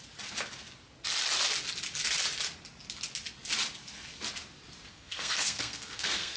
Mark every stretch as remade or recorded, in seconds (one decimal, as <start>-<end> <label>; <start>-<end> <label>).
0.0-4.9 recorded; 4.9-6.4 remade

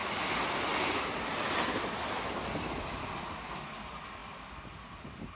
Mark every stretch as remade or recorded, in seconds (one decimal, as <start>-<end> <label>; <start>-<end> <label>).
0.0-5.4 recorded

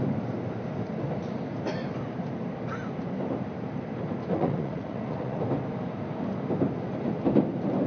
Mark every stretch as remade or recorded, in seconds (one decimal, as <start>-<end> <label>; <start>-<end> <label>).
0.0-4.3 recorded; 4.3-5.4 remade; 5.4-7.9 recorded

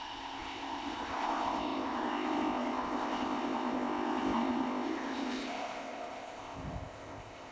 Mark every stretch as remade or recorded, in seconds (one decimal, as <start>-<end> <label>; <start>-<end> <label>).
0.0-7.5 remade

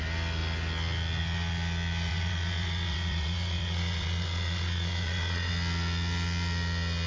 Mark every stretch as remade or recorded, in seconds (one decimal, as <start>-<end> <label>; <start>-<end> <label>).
0.0-2.1 recorded; 2.1-5.5 remade; 5.5-7.1 recorded